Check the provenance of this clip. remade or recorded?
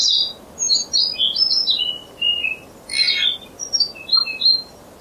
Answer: recorded